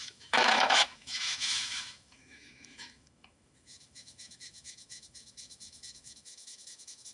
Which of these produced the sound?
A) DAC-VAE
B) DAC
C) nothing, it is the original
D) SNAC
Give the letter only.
A